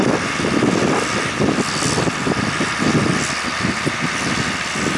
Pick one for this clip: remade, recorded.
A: recorded